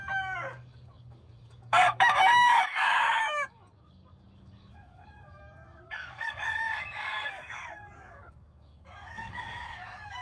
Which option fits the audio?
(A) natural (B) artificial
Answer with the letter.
B